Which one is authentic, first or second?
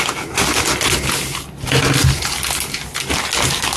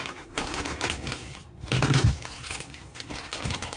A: first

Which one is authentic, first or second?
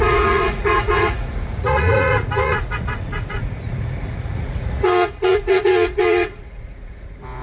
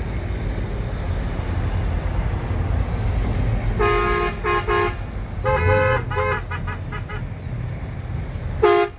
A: second